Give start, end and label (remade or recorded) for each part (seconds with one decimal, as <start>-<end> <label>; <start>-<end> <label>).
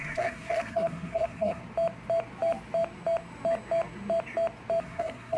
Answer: 0.0-1.6 remade; 1.6-4.8 recorded; 4.8-5.4 remade